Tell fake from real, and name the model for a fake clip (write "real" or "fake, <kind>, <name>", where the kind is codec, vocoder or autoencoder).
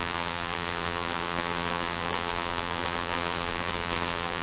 fake, vocoder, BigVGAN v2